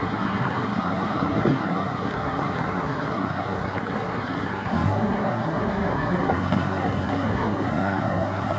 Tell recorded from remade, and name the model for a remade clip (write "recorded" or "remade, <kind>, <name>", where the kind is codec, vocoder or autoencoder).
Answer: remade, codec, SNAC